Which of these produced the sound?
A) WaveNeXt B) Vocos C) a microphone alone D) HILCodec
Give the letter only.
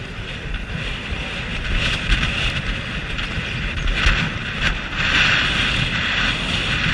C